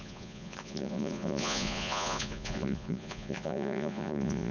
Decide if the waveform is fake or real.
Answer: fake